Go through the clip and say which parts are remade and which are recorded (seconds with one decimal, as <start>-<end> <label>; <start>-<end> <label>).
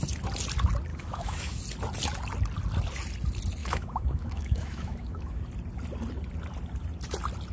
0.0-0.9 recorded; 0.9-1.6 remade; 1.6-3.6 recorded; 3.6-5.4 remade; 5.4-7.5 recorded